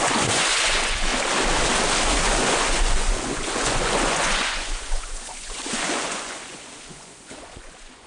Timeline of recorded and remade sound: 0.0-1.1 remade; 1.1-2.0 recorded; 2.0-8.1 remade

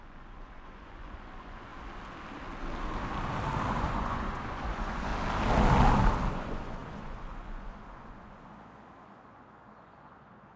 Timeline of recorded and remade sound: 0.0-1.7 remade; 1.7-3.7 recorded; 3.7-5.1 remade; 5.1-6.3 recorded; 6.3-10.6 remade

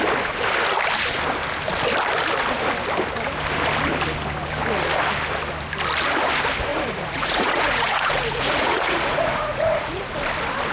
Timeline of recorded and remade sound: 0.0-6.7 recorded; 6.7-10.1 remade; 10.1-10.7 recorded

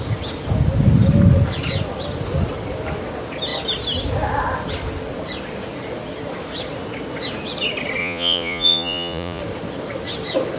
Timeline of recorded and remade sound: 0.0-8.0 recorded; 8.0-9.4 remade; 9.4-10.6 recorded

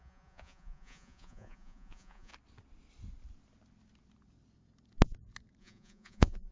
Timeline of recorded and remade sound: 0.0-2.3 remade; 2.3-5.6 recorded; 5.6-6.5 remade